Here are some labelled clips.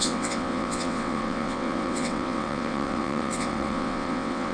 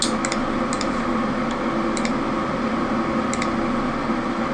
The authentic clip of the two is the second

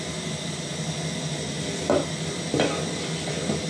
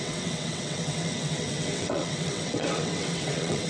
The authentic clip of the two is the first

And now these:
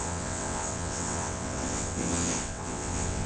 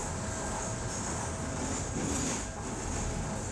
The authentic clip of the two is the second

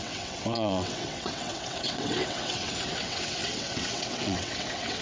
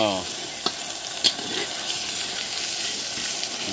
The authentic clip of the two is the second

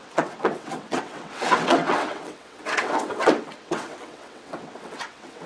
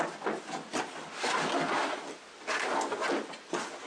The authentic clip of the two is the second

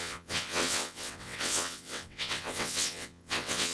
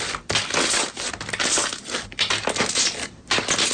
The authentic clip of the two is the second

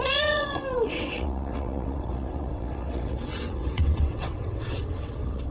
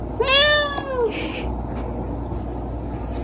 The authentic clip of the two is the second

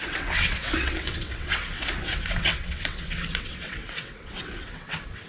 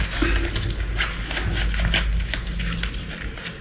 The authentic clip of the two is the second